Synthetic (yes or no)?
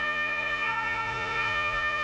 yes